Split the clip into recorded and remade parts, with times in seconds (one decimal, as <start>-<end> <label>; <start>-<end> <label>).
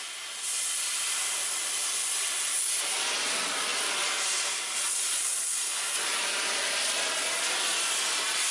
0.0-1.4 recorded; 1.4-2.6 remade; 2.6-8.5 recorded